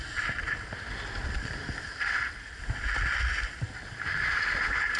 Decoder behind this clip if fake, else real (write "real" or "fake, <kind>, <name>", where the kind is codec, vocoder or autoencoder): real